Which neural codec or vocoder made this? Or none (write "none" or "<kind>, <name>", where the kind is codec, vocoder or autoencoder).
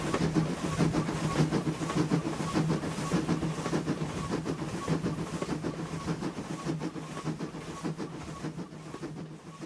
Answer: none